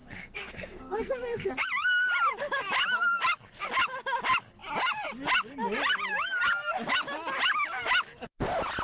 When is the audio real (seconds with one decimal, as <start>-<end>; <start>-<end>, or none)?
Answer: 1.5-8.8